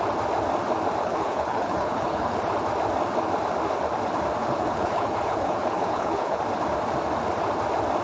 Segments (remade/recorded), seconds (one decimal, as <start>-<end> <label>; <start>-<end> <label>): 0.0-1.0 recorded; 1.0-2.4 remade; 2.4-4.4 recorded; 4.4-6.4 remade; 6.4-8.0 recorded